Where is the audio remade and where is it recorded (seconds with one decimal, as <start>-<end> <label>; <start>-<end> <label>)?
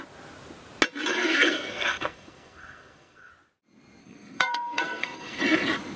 0.0-1.1 recorded; 1.1-3.3 remade; 3.3-4.0 recorded; 4.0-5.4 remade; 5.4-6.0 recorded